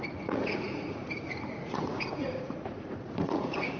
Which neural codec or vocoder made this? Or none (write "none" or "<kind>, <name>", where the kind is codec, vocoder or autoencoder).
vocoder, Vocos